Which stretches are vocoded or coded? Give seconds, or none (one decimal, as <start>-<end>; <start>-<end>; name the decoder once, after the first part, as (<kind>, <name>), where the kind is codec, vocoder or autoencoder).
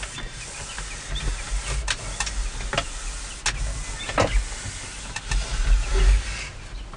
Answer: none